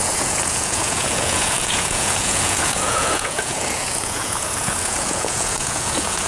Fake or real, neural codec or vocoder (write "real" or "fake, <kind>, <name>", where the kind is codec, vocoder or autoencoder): fake, vocoder, Vocos